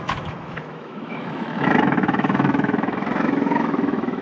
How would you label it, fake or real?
fake